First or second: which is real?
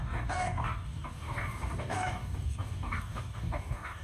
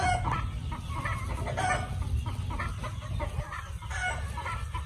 second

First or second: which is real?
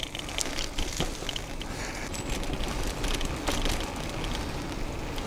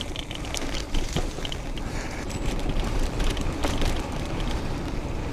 first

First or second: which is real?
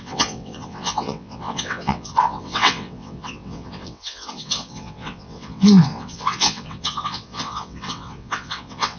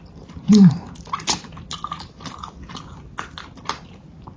second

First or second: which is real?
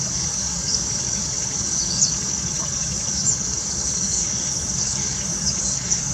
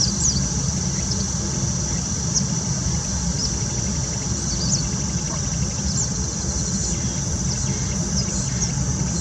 second